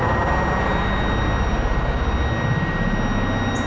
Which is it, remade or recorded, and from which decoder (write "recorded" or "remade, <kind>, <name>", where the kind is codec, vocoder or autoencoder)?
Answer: recorded